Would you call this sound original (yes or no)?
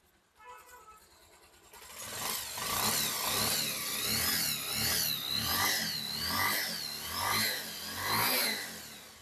yes